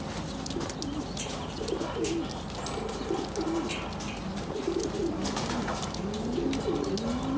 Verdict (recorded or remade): recorded